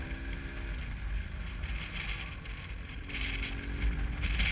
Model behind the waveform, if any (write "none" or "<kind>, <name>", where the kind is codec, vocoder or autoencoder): none